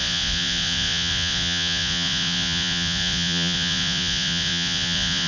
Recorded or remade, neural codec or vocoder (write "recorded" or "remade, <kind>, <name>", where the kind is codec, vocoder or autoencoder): remade, vocoder, Vocos